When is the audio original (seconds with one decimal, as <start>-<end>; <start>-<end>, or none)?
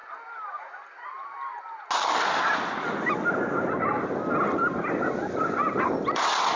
0.0-6.6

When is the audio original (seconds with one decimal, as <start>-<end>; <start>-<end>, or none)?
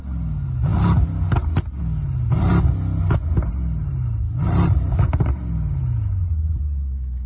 0.0-7.3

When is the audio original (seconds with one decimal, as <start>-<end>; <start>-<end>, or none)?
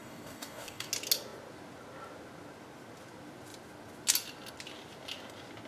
0.9-5.7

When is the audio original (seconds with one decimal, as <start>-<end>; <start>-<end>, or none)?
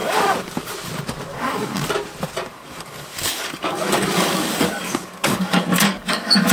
0.7-1.3; 1.9-2.5